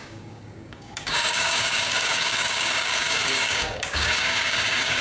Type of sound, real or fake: fake